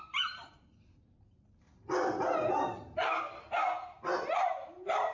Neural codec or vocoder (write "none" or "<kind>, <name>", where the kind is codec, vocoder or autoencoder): none